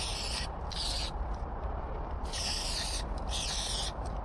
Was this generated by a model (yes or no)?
no